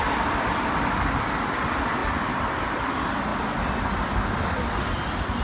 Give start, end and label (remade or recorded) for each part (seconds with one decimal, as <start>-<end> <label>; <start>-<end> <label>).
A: 0.0-3.3 remade; 3.3-5.4 recorded